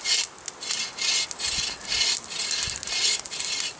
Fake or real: real